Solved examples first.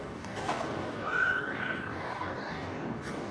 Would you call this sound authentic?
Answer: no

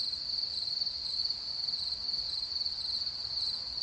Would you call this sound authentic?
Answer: yes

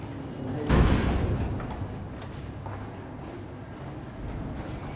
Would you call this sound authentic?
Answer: yes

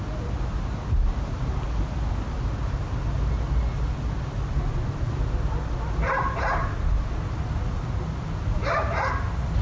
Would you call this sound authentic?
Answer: yes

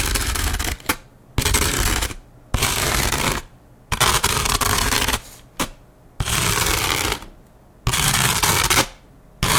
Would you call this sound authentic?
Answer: yes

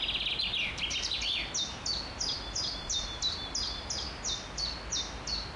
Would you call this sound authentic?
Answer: yes